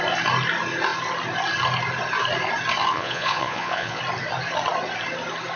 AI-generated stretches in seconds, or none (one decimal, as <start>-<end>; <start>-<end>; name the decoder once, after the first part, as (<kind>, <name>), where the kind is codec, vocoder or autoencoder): 2.9-4.0 (vocoder, Vocos)